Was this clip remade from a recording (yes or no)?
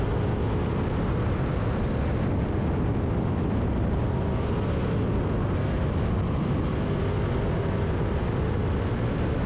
no